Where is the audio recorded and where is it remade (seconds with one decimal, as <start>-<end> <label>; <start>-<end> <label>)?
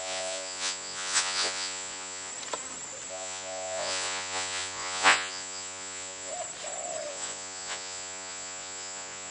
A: 0.0-2.3 remade; 2.3-3.1 recorded; 3.1-6.3 remade; 6.3-7.1 recorded; 7.1-9.3 remade